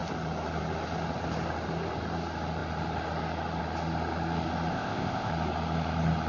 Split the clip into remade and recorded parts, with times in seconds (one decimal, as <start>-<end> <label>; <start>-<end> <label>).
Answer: 0.0-4.7 recorded; 4.7-5.3 remade; 5.3-6.3 recorded